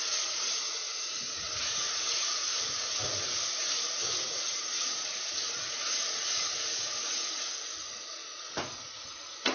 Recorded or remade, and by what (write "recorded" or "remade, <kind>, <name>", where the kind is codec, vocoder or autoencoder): remade, vocoder, Vocos